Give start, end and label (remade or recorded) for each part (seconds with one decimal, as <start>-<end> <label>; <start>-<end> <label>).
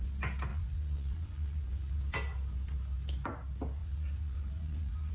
0.0-0.5 recorded; 0.5-2.0 remade; 2.0-3.8 recorded; 3.8-5.1 remade